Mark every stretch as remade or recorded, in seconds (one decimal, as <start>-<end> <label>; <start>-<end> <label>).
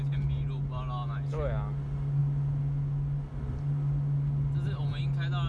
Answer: 0.0-5.5 recorded